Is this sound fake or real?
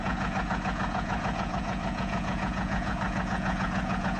fake